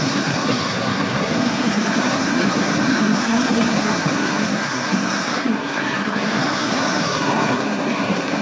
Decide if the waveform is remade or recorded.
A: remade